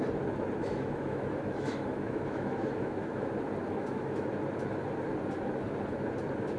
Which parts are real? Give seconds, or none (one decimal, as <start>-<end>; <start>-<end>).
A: 0.0-0.6; 3.3-3.7; 4.3-6.6